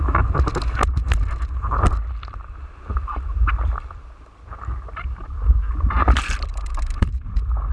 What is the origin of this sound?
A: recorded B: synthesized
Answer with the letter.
A